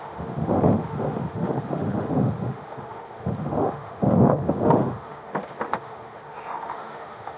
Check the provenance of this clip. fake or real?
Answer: fake